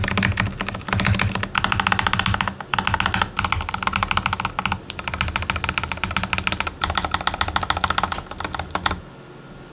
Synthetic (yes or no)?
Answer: no